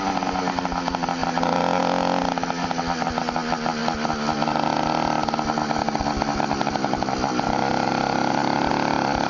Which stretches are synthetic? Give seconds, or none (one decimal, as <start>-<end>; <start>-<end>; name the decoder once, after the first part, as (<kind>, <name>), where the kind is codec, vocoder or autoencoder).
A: none